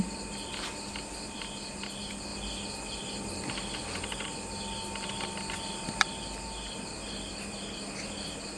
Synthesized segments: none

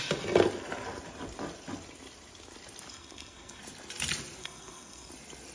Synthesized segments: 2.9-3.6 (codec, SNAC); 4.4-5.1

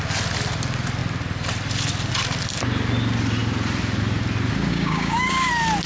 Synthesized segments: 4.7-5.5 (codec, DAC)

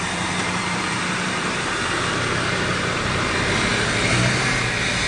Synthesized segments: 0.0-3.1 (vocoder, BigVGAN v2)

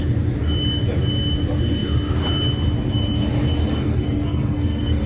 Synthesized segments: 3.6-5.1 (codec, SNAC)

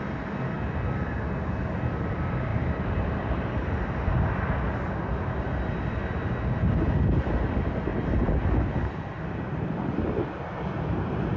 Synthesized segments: none

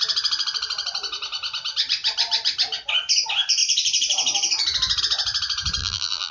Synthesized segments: 5.8-6.3 (vocoder, BigVGAN v2)